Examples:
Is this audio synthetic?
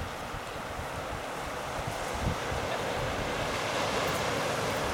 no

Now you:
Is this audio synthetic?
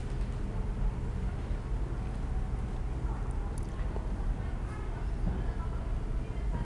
no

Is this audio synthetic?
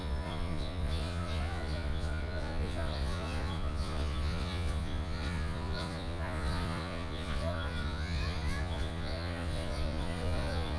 yes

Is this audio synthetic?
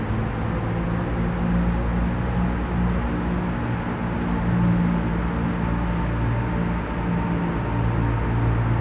no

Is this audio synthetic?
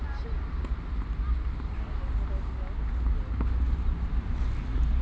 no